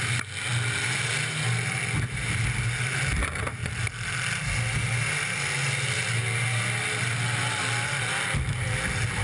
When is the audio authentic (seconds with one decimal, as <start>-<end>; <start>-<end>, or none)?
0.0-9.2